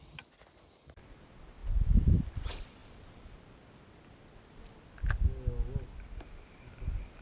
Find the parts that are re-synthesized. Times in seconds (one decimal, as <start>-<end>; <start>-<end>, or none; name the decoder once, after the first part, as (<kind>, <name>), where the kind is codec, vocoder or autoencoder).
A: none